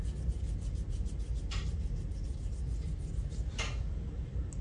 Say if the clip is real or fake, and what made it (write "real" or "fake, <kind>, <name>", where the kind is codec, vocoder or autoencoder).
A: real